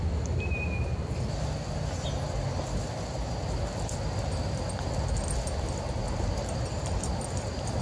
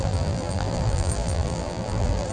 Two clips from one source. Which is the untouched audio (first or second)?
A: first